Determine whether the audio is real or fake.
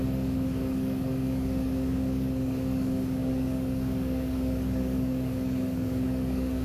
fake